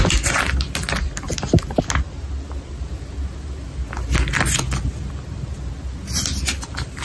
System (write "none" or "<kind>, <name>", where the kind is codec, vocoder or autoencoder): none